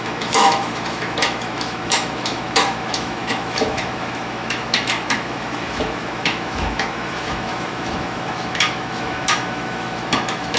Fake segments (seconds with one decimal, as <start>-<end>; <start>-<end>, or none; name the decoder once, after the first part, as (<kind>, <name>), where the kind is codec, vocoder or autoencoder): 0.0-10.6 (autoencoder, DAC-VAE)

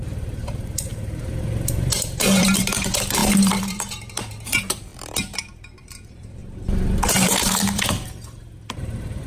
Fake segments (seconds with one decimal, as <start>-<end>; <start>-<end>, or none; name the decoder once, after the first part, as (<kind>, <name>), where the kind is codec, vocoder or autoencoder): 0.0-4.9 (vocoder, BigVGAN v2); 5.8-9.3

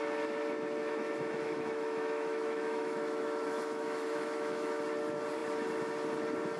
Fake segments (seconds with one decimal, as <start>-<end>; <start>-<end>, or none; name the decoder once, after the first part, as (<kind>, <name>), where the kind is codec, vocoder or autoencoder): 0.8-4.8 (autoencoder, DAC-VAE)

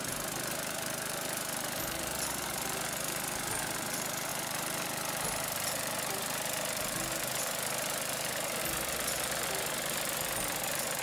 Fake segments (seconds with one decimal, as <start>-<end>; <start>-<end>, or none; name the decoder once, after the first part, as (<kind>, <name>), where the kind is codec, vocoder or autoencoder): none